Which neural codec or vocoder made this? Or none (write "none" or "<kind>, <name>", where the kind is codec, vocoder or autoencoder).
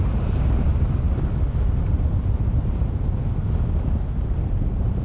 none